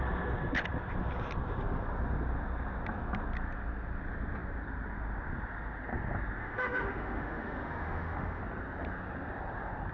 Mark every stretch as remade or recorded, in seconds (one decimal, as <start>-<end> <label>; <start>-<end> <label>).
0.0-6.4 recorded; 6.4-8.4 remade; 8.4-9.9 recorded